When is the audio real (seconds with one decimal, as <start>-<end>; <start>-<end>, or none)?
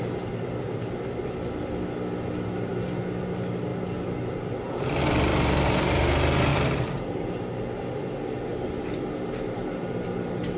0.0-5.3; 6.0-6.5; 7.6-8.5; 9.8-10.6